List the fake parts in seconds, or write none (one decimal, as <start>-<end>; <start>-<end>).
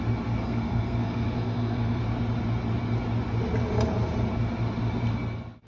0.4-2.0